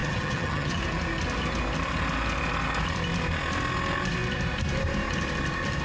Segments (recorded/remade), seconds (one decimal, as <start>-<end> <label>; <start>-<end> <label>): 0.0-0.8 remade; 0.8-5.8 recorded